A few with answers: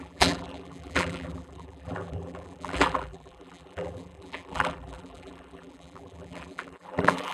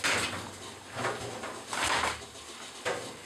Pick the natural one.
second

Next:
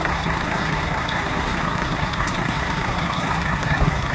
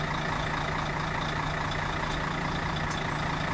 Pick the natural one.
second